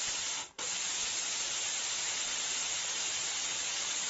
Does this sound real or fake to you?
fake